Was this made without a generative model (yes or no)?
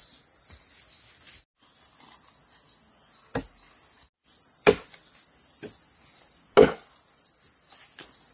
yes